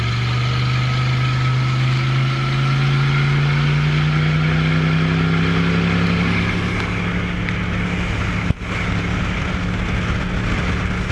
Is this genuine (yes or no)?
yes